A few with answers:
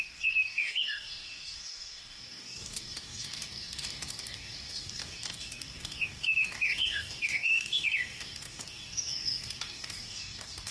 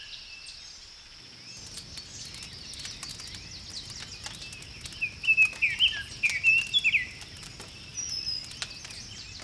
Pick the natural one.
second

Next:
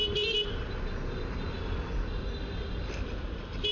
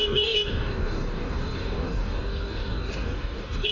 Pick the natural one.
first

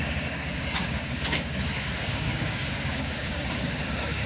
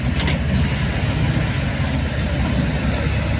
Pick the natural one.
second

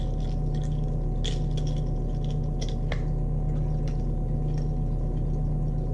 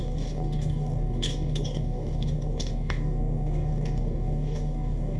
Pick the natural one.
first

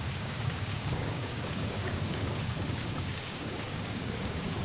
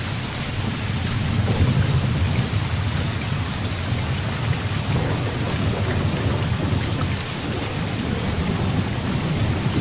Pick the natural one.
second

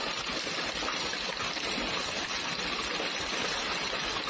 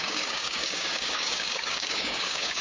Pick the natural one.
first